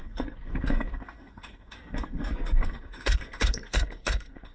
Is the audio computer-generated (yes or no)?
yes